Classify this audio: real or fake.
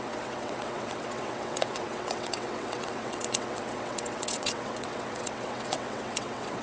fake